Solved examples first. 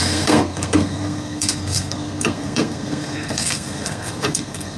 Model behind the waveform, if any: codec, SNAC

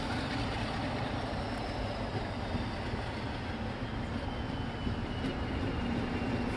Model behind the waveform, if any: none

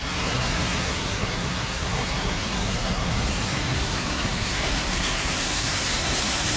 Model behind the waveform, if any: codec, SNAC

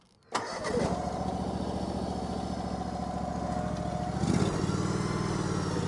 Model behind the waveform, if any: none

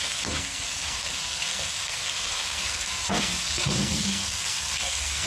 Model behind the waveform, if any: codec, SNAC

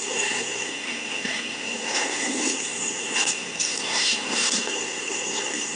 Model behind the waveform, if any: codec, SNAC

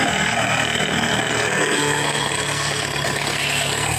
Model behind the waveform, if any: codec, SNAC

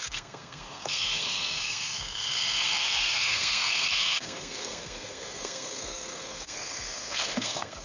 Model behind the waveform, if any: codec, SNAC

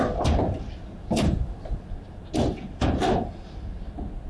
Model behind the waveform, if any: none